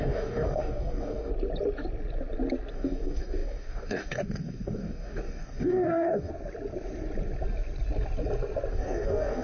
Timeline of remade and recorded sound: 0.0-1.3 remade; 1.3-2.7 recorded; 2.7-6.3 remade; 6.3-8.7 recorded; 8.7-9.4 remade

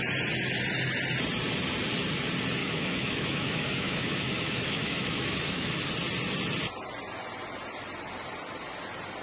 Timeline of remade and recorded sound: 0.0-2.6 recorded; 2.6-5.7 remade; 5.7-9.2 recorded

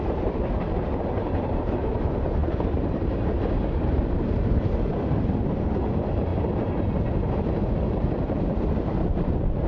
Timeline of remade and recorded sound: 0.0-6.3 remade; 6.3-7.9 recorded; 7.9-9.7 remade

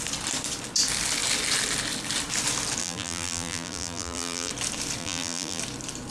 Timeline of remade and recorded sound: 0.0-2.8 recorded; 2.8-4.5 remade; 4.5-5.0 recorded; 5.0-5.6 remade; 5.6-6.1 recorded

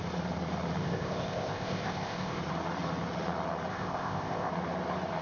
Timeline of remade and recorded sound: 0.0-0.8 recorded; 0.8-2.4 remade; 2.4-3.7 recorded; 3.7-4.5 remade; 4.5-5.2 recorded

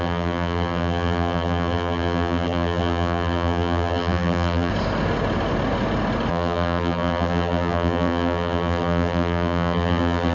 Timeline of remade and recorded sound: 0.0-4.7 remade; 4.7-6.3 recorded; 6.3-10.3 remade